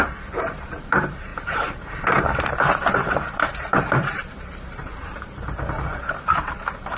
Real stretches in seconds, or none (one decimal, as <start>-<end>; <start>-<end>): none